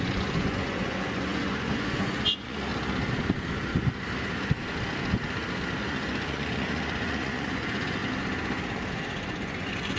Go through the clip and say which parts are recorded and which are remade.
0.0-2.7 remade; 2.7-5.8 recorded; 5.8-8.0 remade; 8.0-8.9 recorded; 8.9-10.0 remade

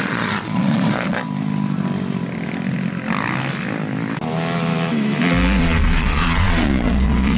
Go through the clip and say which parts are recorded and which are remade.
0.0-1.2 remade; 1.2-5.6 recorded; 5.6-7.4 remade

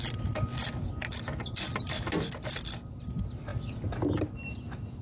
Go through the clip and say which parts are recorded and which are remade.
0.0-5.0 recorded

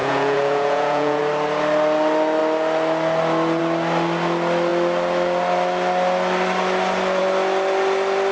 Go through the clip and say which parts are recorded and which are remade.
0.0-1.2 remade; 1.2-8.3 recorded

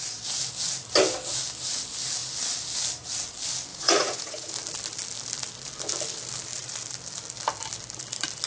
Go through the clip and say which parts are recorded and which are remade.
0.0-3.7 recorded; 3.7-4.5 remade; 4.5-8.5 recorded

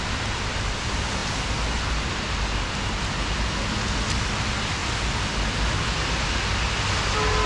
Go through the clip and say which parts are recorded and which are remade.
0.0-7.5 recorded